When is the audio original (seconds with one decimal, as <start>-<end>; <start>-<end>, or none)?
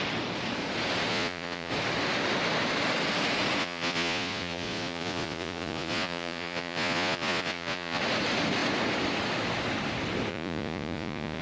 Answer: 0.0-1.1; 1.7-3.6; 8.0-10.3